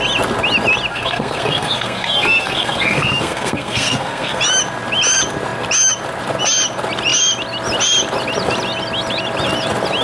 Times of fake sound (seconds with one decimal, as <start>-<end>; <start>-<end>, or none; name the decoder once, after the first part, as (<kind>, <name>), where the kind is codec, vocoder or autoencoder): 0.9-4.4 (codec, SNAC)